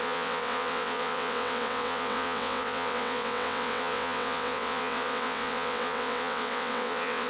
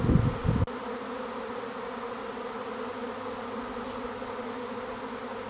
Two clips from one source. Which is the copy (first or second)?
first